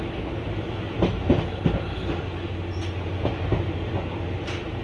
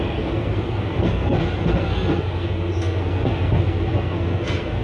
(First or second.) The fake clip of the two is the second